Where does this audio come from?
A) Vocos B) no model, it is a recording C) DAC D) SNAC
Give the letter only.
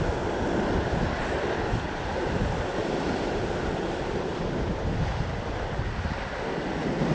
B